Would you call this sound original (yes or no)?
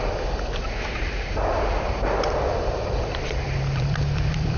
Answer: no